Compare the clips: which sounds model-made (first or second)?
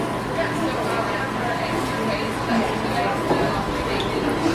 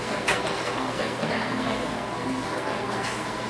second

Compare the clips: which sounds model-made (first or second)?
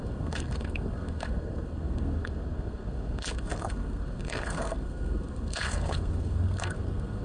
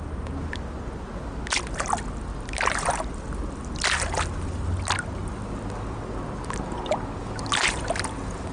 first